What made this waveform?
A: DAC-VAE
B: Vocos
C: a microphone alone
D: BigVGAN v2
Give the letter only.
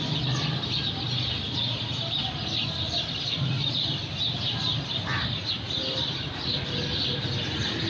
D